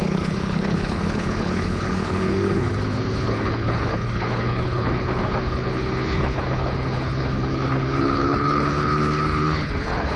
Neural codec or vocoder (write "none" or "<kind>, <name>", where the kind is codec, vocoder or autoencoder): codec, HILCodec